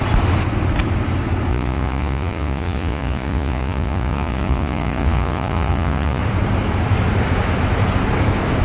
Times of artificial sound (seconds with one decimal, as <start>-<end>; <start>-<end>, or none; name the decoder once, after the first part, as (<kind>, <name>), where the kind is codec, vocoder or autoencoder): 1.5-6.2 (vocoder, Vocos)